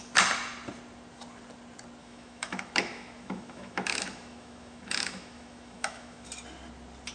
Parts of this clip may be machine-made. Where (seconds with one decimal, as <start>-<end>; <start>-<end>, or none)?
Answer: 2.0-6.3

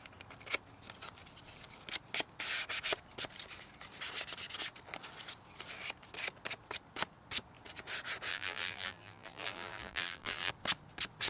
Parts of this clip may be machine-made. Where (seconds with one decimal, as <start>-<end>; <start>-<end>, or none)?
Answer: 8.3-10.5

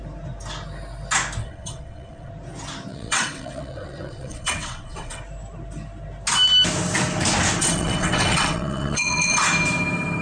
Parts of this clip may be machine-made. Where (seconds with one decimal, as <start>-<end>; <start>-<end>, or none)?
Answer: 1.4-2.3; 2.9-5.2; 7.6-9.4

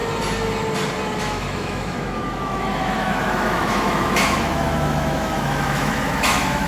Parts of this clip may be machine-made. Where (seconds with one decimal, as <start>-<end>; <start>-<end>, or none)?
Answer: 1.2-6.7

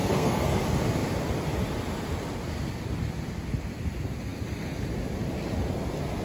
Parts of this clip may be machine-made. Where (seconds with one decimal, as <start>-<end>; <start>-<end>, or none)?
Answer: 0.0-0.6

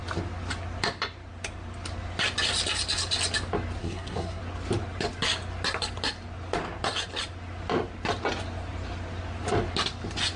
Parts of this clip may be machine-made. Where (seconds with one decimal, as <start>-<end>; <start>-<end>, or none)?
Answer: 3.8-4.4

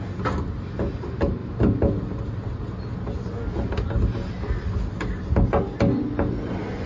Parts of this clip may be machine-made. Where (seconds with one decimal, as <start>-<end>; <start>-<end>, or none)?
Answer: none

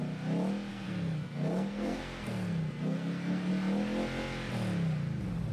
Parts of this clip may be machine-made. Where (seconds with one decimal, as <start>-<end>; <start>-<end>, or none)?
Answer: 0.7-3.5